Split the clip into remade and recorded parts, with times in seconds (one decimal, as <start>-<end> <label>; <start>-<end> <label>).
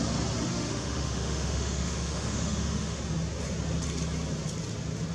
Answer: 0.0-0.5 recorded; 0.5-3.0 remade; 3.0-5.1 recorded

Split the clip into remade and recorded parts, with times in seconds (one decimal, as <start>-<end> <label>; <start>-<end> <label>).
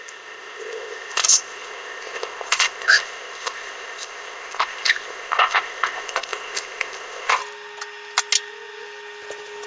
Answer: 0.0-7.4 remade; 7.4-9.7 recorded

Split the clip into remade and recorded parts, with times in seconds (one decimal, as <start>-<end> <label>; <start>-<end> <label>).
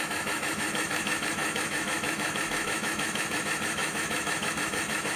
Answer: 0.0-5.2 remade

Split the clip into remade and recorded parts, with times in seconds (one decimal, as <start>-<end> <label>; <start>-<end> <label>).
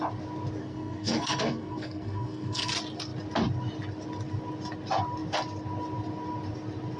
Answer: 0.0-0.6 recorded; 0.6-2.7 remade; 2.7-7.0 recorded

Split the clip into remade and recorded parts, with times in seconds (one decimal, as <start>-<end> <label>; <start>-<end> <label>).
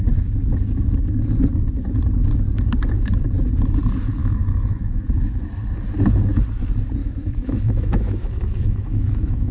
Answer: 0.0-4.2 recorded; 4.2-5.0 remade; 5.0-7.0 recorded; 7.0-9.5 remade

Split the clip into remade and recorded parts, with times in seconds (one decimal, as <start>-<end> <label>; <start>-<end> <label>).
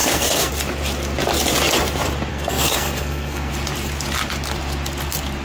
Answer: 0.0-0.5 remade; 0.5-2.3 recorded; 2.3-3.5 remade; 3.5-5.4 recorded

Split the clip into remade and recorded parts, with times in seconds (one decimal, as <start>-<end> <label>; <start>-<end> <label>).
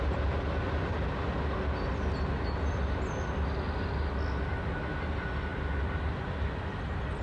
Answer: 0.0-7.2 recorded